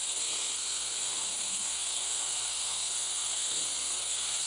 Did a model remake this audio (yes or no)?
yes